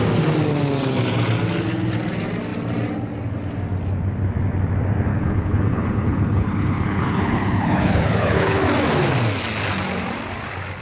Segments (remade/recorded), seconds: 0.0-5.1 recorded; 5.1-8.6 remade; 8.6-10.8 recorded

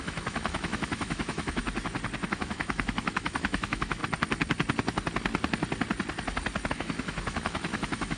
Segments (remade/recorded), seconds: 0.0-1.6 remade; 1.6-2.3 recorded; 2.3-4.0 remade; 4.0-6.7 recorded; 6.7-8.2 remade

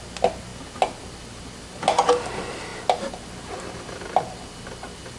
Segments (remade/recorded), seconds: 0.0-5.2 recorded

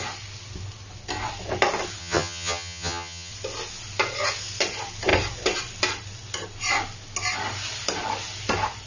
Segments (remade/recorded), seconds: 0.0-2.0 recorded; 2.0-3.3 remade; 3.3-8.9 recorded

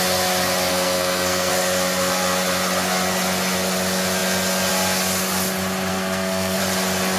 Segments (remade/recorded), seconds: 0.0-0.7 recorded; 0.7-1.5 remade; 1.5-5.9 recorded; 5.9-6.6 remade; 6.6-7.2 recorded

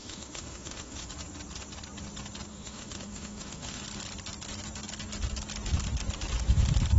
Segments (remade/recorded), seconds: 0.0-1.1 remade; 1.1-2.5 recorded; 2.5-3.8 remade; 3.8-7.0 recorded

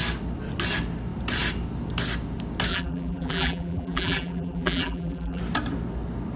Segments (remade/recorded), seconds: 0.0-2.7 recorded; 2.7-5.4 remade; 5.4-6.4 recorded

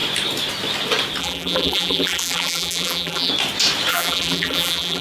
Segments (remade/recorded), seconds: 0.0-1.2 recorded; 1.2-3.3 remade; 3.3-3.9 recorded; 3.9-5.0 remade